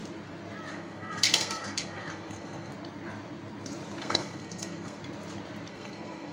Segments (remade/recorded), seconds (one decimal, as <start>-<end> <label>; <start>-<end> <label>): 0.0-0.7 recorded; 0.7-2.7 remade; 2.7-4.0 recorded; 4.0-5.0 remade; 5.0-5.7 recorded; 5.7-6.3 remade